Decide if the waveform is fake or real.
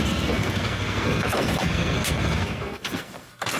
fake